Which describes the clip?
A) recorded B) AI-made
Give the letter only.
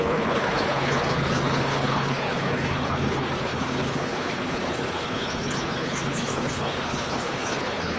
B